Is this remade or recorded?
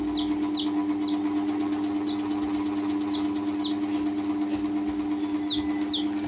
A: recorded